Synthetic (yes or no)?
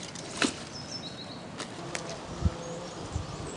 no